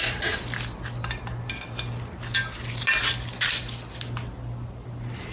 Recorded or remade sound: recorded